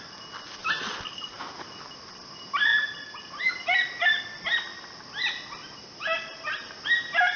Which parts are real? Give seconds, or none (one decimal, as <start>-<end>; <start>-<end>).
0.0-7.4